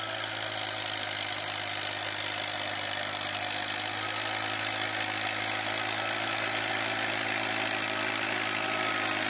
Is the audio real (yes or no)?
yes